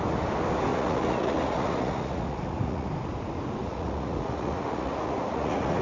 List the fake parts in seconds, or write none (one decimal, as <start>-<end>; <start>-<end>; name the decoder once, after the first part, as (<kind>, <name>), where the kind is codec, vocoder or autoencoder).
0.7-2.9 (vocoder, Vocos); 3.6-5.8